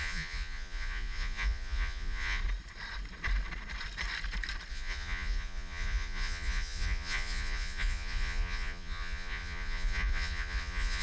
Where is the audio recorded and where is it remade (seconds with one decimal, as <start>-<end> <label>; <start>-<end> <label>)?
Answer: 0.0-2.4 remade; 2.4-4.7 recorded; 4.7-11.0 remade